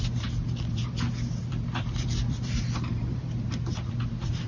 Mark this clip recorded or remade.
remade